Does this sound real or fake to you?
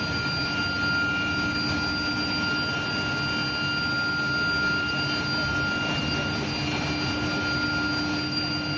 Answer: real